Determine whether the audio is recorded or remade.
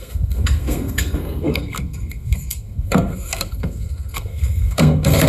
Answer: remade